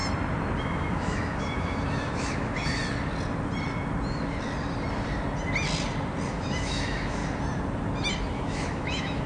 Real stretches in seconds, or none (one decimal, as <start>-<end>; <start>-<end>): 0.0-0.6; 2.8-6.3; 7.2-8.2